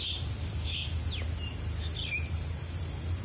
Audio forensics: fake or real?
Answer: real